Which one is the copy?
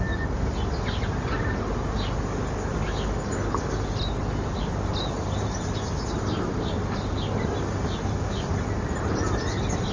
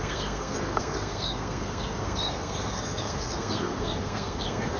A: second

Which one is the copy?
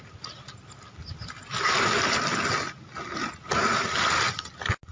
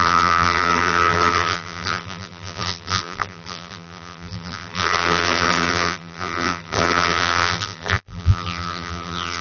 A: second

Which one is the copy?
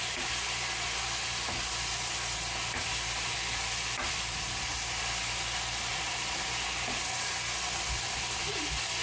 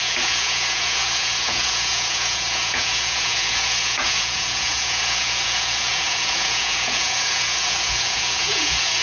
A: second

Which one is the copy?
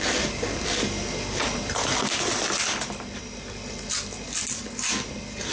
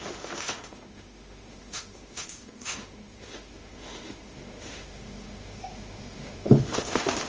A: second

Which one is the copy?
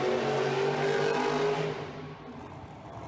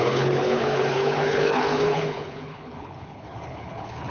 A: second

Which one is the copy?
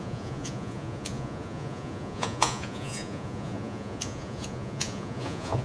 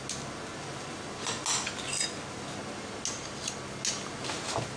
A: first